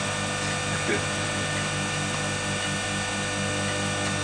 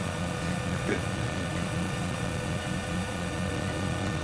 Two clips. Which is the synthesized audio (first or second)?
second